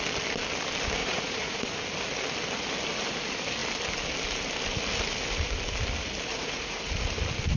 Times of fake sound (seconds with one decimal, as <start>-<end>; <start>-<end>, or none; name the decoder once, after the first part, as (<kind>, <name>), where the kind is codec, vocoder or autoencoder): 1.0-1.8 (vocoder, Vocos); 6.3-6.9